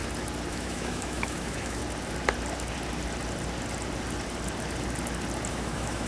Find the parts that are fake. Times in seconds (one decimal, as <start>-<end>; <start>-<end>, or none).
0.5-1.8; 5.5-6.1